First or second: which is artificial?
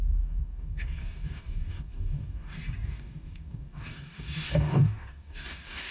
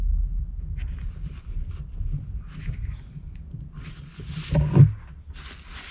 first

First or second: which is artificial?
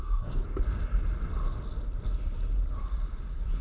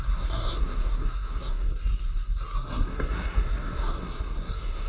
second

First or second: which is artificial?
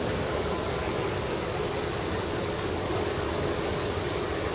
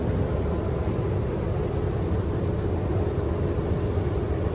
first